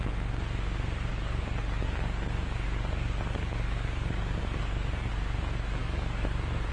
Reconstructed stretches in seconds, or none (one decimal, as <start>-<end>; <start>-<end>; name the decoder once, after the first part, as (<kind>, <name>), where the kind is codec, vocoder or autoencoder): 1.1-5.1 (codec, DAC); 5.8-6.7